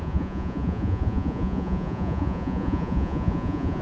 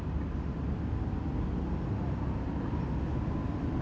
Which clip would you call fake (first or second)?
first